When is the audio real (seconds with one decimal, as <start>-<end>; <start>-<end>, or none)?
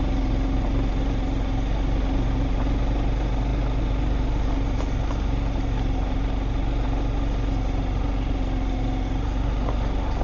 0.0-10.2